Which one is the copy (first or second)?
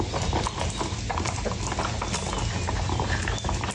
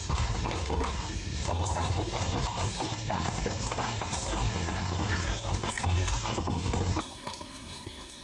second